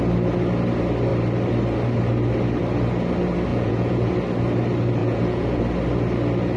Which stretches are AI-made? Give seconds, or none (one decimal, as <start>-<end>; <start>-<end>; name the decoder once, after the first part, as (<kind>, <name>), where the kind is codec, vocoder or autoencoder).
3.5-4.1 (vocoder, Vocos); 5.0-5.6